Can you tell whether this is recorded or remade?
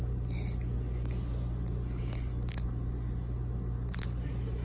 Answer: recorded